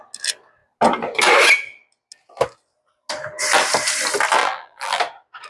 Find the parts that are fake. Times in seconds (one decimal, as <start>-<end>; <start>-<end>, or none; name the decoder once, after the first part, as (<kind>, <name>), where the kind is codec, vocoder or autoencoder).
4.4-5.0 (vocoder, BigVGAN v2)